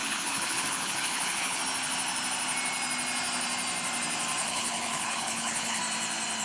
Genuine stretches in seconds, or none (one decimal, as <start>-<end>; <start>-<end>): 1.6-4.4; 5.8-6.4